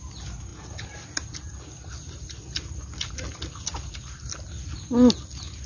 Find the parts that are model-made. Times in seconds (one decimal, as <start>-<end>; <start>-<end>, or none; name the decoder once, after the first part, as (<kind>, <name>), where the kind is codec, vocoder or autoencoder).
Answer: none

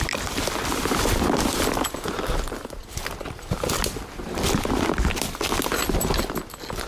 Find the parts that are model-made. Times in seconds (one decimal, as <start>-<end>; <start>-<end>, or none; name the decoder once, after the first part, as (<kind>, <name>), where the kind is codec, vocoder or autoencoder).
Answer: none

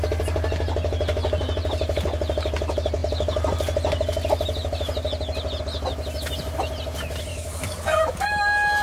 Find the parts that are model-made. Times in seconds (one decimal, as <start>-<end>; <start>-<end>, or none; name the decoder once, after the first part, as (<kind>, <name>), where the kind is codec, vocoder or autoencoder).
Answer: 7.3-8.2 (codec, DAC)

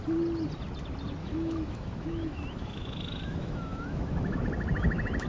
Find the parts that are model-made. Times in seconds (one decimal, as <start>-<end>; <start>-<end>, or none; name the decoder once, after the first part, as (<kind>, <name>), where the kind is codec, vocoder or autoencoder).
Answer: 1.2-4.4 (autoencoder, DAC-VAE)

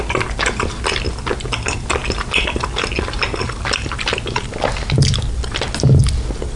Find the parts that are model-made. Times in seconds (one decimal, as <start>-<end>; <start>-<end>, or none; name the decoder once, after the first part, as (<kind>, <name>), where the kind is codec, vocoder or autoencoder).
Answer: none

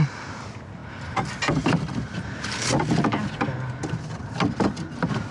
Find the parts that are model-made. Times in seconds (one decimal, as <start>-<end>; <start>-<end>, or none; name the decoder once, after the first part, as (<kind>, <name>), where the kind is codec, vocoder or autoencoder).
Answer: none

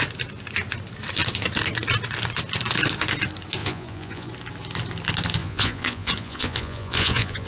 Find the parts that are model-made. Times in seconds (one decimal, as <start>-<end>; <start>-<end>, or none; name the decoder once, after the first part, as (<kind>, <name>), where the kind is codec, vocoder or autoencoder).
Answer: 3.6-4.3 (vocoder, Vocos); 5.4-7.5